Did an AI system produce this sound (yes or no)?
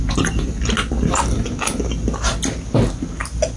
no